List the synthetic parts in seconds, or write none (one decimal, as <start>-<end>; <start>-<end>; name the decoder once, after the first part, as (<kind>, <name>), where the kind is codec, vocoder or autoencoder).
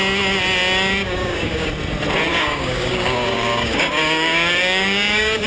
1.0-1.7 (codec, DAC); 2.3-5.5